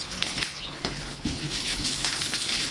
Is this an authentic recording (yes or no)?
no